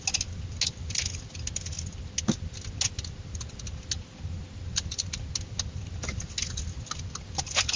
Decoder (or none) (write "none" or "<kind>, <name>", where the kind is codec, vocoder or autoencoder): none